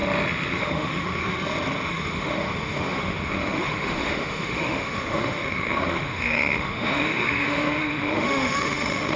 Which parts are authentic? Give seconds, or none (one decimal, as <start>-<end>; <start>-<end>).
0.0-0.6; 1.2-1.9